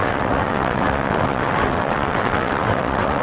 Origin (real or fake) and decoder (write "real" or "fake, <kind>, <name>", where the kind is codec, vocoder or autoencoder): fake, vocoder, WaveNeXt